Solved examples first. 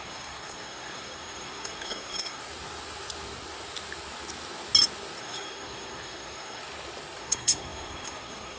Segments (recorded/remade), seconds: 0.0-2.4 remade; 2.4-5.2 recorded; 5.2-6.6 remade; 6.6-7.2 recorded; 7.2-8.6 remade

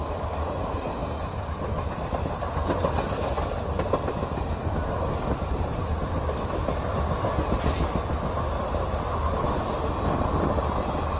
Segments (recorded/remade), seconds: 0.0-11.2 recorded

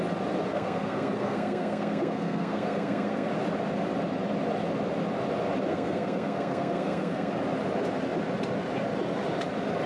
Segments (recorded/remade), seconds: 0.0-0.5 recorded; 0.5-3.3 remade; 3.3-5.7 recorded; 5.7-7.3 remade; 7.3-9.9 recorded

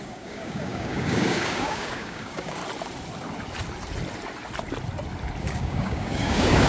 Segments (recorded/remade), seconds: 0.0-2.6 remade; 2.6-5.4 recorded; 5.4-6.7 remade